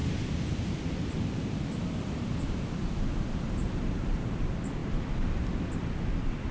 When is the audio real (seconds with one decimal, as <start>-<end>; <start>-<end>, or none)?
0.0-6.5